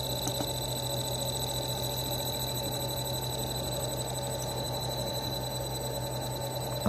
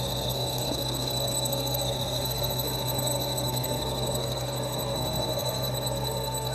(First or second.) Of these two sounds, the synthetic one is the second